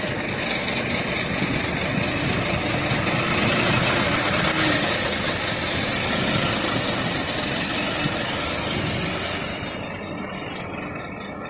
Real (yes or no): yes